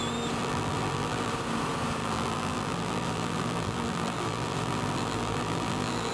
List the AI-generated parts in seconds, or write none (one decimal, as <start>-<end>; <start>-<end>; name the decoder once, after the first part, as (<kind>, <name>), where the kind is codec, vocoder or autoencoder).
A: 0.4-1.3 (vocoder, BigVGAN v2); 2.0-6.1